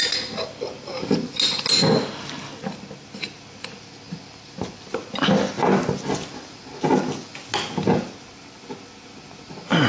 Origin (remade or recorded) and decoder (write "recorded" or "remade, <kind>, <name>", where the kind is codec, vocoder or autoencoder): recorded